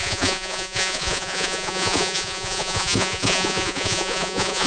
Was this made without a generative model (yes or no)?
no